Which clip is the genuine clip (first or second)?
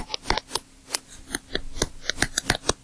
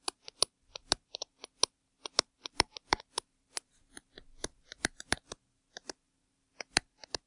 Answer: first